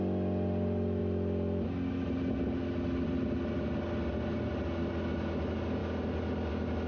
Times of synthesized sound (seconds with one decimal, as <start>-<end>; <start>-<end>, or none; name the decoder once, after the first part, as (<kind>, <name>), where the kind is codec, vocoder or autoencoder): none